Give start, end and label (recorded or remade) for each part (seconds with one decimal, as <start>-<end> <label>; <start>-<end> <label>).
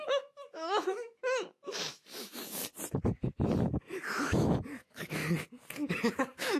0.0-2.6 remade; 2.6-3.6 recorded; 3.6-5.2 remade; 5.2-6.1 recorded; 6.1-6.6 remade